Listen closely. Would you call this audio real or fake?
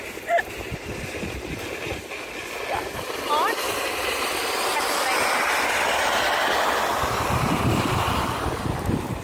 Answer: real